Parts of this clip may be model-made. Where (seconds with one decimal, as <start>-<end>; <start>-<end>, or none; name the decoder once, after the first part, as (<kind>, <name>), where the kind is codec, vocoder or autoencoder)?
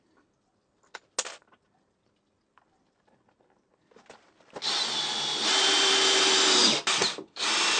none